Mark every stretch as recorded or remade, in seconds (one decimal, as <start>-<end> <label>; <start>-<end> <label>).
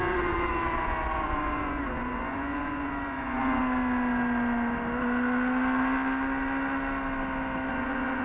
0.0-3.6 remade; 3.6-7.7 recorded; 7.7-8.2 remade